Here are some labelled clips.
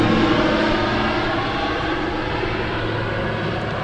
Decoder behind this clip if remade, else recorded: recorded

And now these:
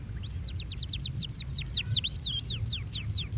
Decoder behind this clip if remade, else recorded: recorded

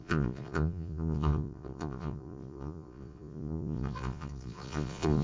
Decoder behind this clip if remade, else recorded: remade, vocoder, Vocos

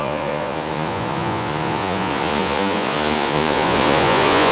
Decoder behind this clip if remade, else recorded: remade, vocoder, Vocos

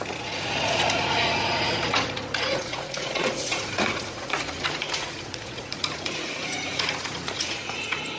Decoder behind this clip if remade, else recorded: remade, vocoder, Vocos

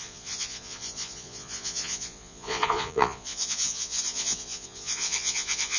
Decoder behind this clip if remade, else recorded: remade, vocoder, Vocos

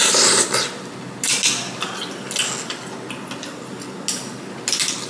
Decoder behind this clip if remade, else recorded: recorded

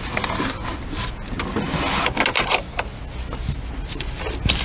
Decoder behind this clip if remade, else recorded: recorded